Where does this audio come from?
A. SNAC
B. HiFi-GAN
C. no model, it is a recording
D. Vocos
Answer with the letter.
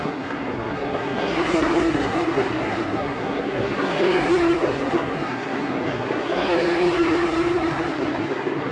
A